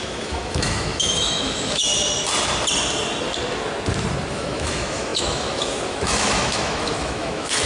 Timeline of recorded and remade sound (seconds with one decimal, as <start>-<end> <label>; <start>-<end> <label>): 0.0-1.9 remade; 1.9-4.3 recorded; 4.3-7.7 remade